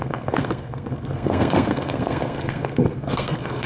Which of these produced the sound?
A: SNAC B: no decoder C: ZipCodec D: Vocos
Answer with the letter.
A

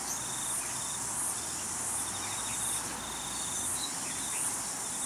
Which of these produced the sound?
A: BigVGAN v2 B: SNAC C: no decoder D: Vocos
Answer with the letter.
C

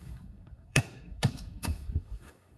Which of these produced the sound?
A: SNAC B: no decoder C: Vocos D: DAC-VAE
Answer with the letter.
A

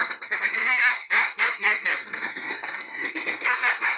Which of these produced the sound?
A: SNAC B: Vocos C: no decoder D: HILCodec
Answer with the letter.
A